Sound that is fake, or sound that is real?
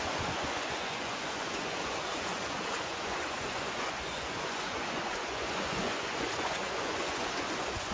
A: fake